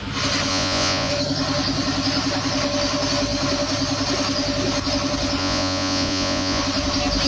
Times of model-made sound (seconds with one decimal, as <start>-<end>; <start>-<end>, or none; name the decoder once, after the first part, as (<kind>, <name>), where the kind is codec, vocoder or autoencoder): 0.5-1.1 (vocoder, Vocos); 5.4-6.6